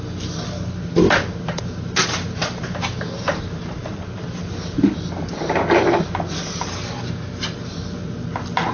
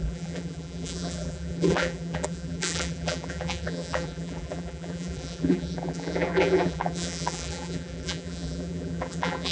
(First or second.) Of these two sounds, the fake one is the second